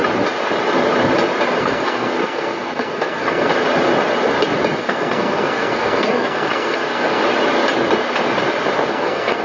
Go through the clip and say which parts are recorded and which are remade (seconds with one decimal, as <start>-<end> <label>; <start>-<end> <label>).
0.0-1.6 recorded; 1.6-3.5 remade; 3.5-4.8 recorded; 4.8-7.2 remade; 7.2-8.9 recorded; 8.9-9.4 remade